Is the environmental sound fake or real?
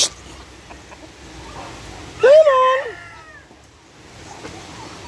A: real